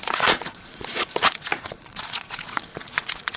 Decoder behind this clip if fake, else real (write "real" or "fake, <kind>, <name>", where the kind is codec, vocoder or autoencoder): fake, vocoder, Vocos